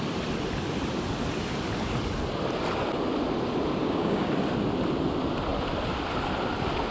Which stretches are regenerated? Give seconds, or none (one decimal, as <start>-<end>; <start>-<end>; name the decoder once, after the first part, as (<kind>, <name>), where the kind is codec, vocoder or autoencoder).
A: 3.8-4.3 (codec, DAC)